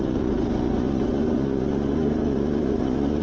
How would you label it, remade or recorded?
remade